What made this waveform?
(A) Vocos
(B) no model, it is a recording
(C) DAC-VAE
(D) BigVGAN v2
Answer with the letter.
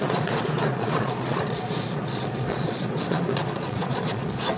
A